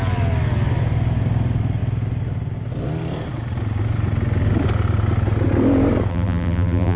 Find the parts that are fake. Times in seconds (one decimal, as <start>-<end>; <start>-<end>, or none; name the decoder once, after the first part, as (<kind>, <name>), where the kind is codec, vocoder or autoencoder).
6.1-7.0 (vocoder, BigVGAN v2)